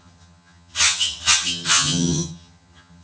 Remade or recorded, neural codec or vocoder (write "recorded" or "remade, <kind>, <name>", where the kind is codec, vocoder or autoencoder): remade, vocoder, HiFi-GAN